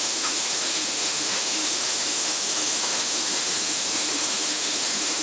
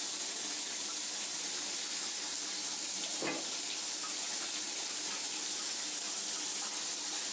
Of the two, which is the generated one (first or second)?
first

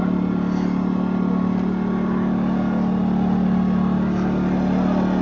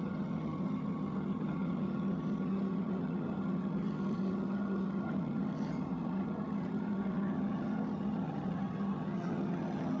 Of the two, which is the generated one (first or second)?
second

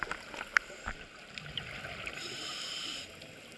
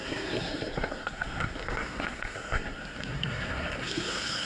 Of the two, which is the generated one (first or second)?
second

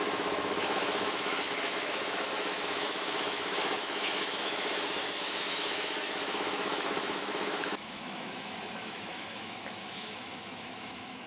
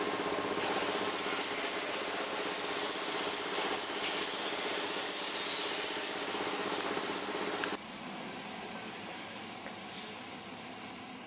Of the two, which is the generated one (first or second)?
first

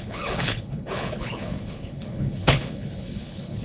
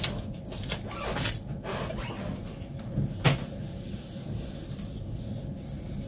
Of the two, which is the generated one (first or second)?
first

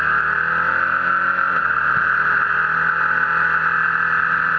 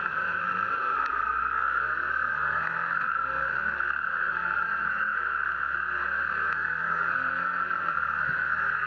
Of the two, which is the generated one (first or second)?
second